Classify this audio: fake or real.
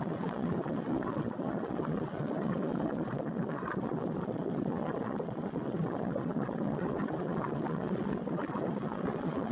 fake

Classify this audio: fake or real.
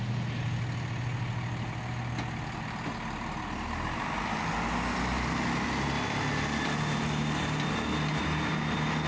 real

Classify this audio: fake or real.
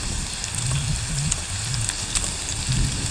real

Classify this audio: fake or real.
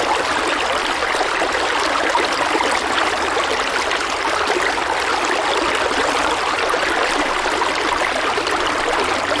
real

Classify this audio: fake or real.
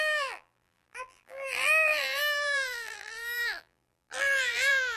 fake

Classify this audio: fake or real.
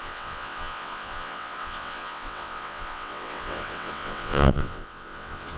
fake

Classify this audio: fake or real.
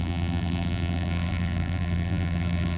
fake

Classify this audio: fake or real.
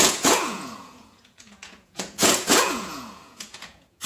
fake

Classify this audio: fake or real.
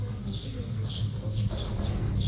fake